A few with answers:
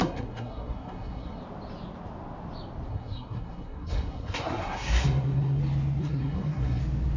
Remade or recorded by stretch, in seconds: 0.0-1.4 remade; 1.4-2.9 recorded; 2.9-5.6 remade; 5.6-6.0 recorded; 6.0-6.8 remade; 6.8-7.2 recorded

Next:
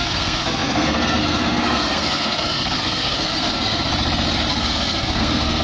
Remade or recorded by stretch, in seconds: 0.0-3.9 remade; 3.9-4.5 recorded; 4.5-5.6 remade

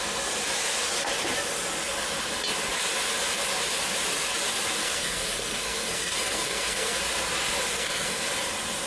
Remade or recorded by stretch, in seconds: 0.0-4.8 recorded; 4.8-7.0 remade; 7.0-7.7 recorded; 7.7-8.2 remade; 8.2-8.9 recorded